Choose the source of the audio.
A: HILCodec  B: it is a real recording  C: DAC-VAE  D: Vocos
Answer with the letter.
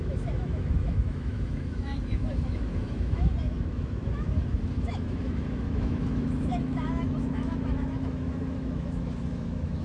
C